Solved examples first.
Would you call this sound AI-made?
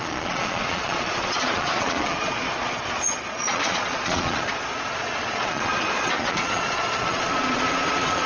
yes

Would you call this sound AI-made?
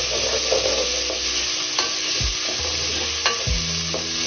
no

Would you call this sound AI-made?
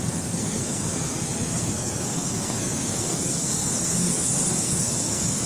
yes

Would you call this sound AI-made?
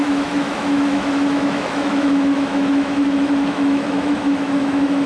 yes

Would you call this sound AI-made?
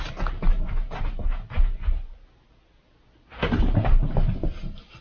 no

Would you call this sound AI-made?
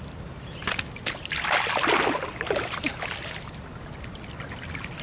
no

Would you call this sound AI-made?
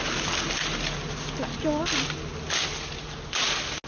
no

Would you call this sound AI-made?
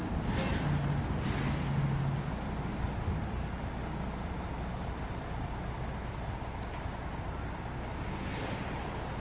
no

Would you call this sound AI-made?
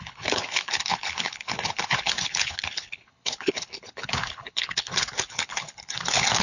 yes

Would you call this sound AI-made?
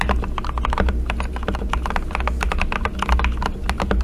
no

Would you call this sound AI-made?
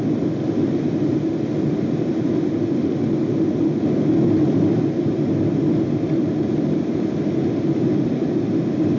no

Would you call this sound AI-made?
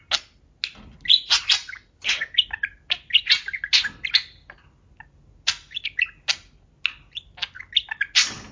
no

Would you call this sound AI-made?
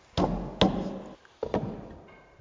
no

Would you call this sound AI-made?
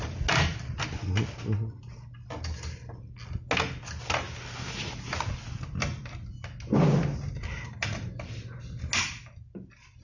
no